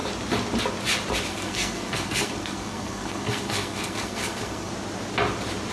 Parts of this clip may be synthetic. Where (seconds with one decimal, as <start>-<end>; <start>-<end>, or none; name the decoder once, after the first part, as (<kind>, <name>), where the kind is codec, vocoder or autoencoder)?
1.3-4.7 (codec, SNAC)